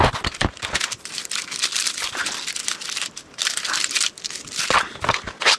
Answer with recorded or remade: remade